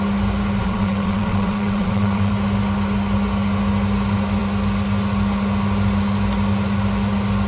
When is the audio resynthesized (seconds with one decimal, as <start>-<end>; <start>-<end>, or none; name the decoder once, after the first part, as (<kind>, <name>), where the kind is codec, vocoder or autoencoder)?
0.6-2.3 (vocoder, WaveNeXt)